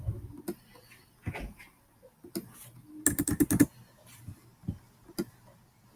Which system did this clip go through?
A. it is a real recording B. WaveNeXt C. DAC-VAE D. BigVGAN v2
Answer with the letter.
A